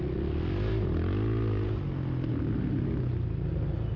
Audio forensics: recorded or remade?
recorded